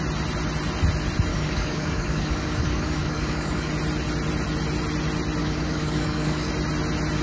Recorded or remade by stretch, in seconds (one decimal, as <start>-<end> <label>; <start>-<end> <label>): 0.0-1.3 recorded; 1.3-3.7 remade; 3.7-5.4 recorded; 5.4-6.5 remade; 6.5-7.2 recorded